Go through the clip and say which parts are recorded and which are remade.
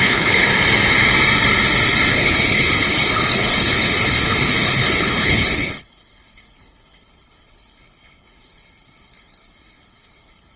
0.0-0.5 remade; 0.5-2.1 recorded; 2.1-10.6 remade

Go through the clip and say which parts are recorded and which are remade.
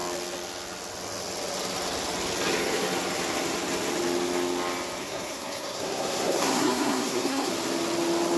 0.0-5.0 recorded; 5.0-7.5 remade; 7.5-8.4 recorded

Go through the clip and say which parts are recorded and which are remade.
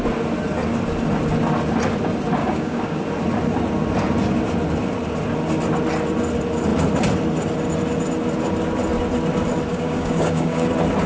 0.0-2.4 recorded; 2.4-3.0 remade; 3.0-9.7 recorded; 9.7-10.7 remade; 10.7-11.1 recorded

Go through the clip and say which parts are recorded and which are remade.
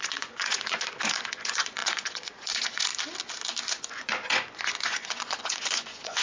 0.0-2.9 remade; 2.9-3.7 recorded; 3.7-6.2 remade